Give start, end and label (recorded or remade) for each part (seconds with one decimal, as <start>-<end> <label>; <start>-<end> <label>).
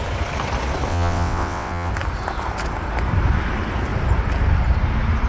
0.0-0.9 recorded; 0.9-1.9 remade; 1.9-5.3 recorded